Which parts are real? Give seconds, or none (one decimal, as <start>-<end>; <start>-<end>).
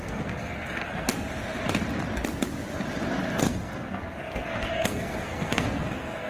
1.1-3.4